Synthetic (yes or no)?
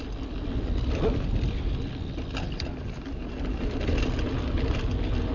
no